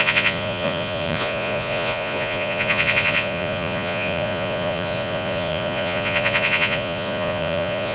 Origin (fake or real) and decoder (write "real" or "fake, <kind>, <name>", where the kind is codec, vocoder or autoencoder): fake, vocoder, Vocos